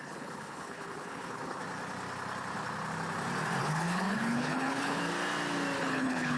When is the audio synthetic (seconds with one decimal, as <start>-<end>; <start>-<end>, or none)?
0.0-1.6; 3.6-5.0; 5.8-6.4